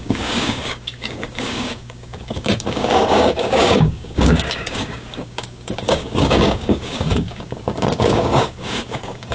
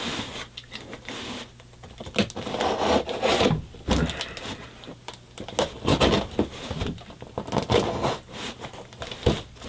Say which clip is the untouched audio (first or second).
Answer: second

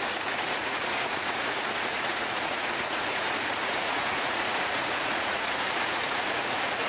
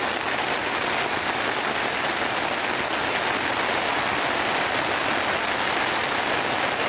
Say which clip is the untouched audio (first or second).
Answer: second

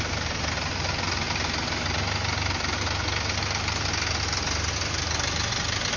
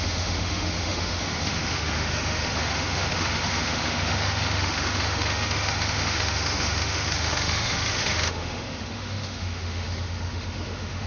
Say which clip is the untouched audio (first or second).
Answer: first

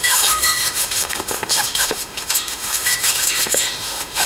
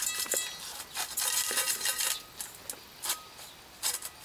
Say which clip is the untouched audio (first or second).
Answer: second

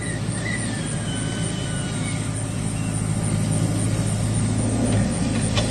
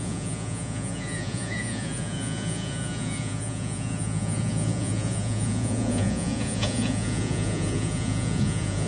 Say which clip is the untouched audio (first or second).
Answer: first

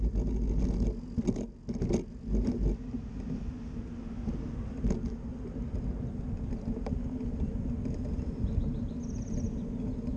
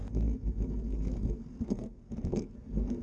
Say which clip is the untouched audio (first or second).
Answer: first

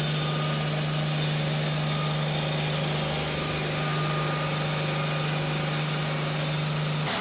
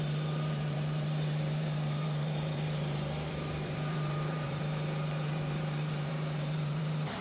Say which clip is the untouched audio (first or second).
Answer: first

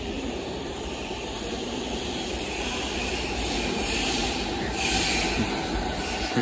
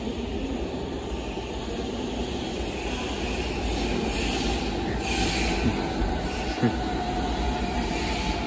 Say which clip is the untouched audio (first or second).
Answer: second